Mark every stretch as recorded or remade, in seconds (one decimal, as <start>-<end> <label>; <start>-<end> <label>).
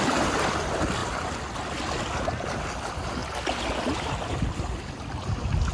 0.0-5.7 recorded